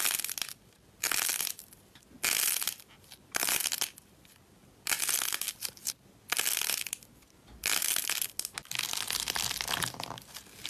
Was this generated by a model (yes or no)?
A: no